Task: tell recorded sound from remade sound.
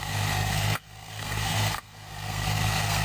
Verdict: remade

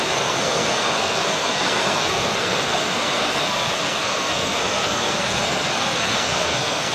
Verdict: remade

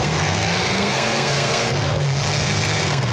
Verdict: remade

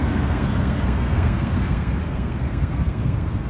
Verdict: remade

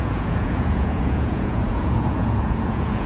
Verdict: remade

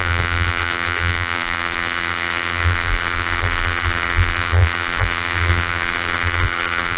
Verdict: remade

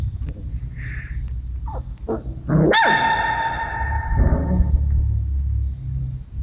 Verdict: recorded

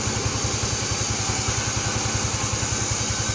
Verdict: recorded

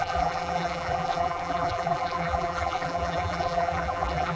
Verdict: remade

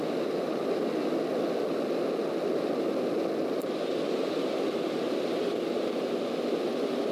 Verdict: recorded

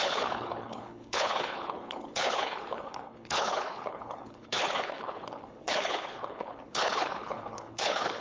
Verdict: remade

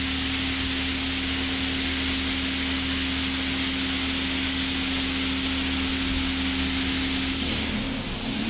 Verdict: recorded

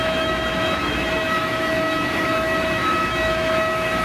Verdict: remade